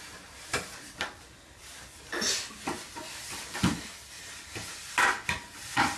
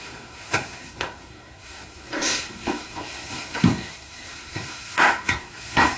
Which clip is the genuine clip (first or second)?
first